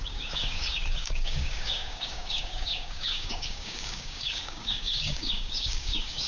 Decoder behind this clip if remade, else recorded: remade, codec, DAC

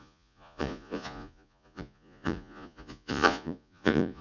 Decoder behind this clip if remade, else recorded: remade, vocoder, Vocos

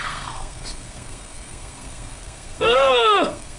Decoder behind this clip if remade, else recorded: remade, codec, SNAC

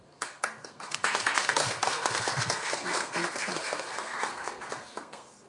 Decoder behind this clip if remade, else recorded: remade, codec, SNAC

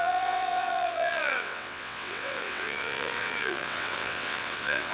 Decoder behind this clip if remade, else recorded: remade, vocoder, WaveNeXt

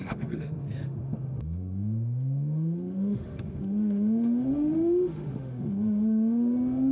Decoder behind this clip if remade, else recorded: remade, autoencoder, DAC-VAE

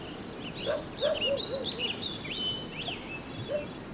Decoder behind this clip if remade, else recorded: recorded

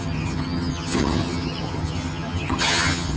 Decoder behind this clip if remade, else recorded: remade, vocoder, HiFi-GAN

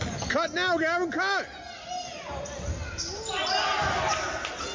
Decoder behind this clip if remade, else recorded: recorded